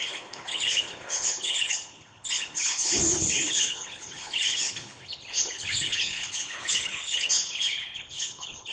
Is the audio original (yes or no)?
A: no